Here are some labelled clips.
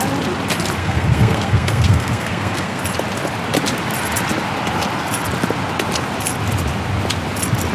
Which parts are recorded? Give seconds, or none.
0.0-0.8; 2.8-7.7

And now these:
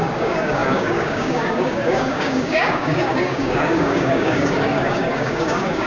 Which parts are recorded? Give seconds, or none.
none

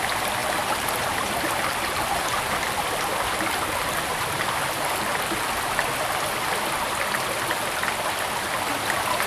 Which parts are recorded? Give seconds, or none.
0.0-0.4; 4.3-9.3

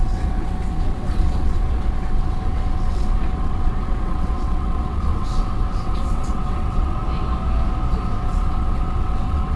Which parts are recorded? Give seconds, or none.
7.0-8.0